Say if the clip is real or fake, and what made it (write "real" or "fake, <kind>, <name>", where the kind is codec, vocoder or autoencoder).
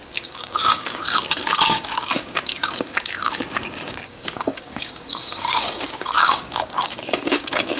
fake, codec, DAC